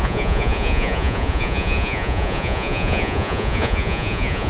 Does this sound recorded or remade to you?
remade